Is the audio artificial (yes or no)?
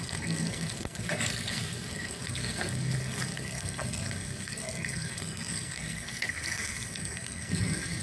yes